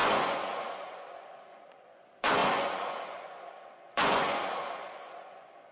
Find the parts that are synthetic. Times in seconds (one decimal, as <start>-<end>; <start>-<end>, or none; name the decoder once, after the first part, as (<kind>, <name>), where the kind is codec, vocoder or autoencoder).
0.0-5.7 (vocoder, Vocos)